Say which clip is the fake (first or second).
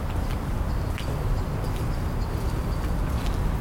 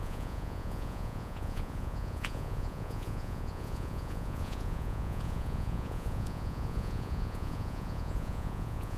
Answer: second